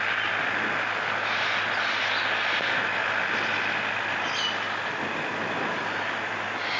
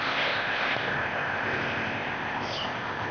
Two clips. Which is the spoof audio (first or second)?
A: second